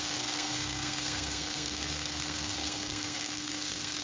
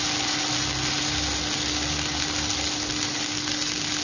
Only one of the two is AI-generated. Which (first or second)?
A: first